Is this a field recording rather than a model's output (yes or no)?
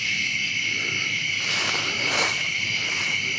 no